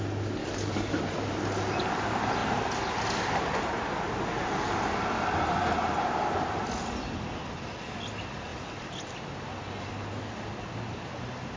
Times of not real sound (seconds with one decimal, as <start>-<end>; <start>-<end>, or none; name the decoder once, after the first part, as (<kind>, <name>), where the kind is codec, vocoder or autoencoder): 0.4-1.0 (codec, DAC)